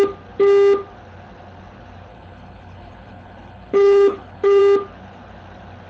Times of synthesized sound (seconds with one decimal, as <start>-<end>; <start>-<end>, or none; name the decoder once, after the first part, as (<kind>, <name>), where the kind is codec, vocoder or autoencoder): 2.1-4.6 (codec, HILCodec)